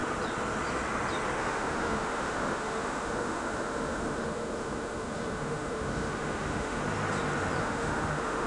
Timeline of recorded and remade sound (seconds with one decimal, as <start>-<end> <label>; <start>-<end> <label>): 0.0-1.4 recorded; 1.4-6.8 remade; 6.8-7.6 recorded; 7.6-8.5 remade